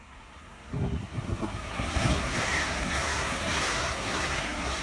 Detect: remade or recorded remade